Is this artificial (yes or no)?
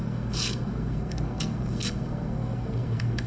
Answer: yes